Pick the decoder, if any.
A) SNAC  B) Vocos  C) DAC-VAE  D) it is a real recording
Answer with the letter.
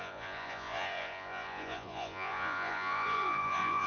B